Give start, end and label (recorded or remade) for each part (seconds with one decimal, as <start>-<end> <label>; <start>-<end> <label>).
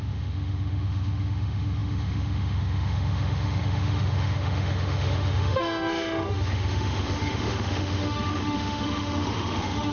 0.0-9.9 remade